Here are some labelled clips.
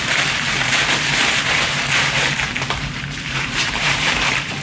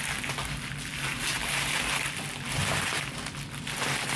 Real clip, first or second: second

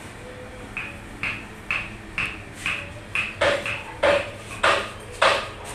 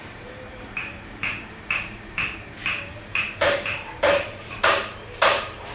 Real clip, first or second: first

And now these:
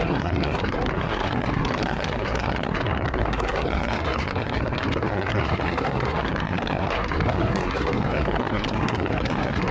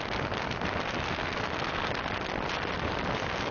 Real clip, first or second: second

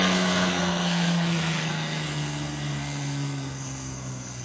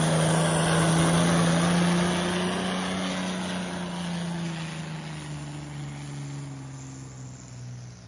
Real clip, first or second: second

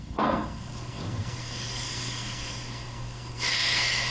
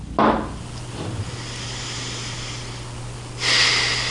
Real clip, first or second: second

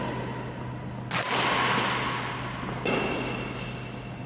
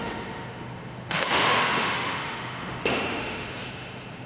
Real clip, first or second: first